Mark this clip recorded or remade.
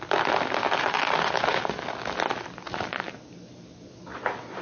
recorded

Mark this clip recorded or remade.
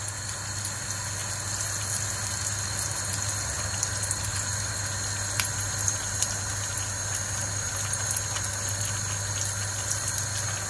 recorded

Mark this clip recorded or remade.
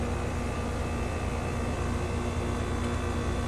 recorded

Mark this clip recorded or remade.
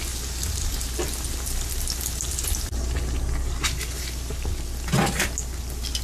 recorded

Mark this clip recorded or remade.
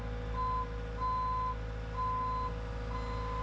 recorded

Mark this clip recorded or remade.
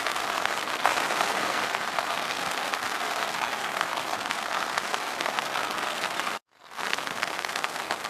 remade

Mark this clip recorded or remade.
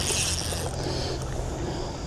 recorded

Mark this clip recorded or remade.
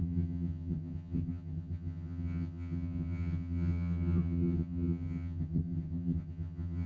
remade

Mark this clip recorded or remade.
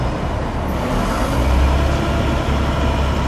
recorded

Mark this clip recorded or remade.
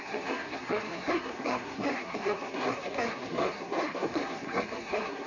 remade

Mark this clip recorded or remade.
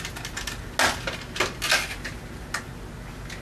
recorded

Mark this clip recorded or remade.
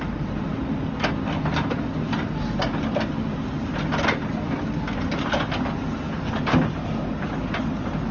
recorded